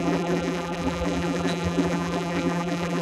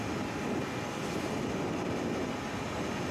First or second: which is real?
second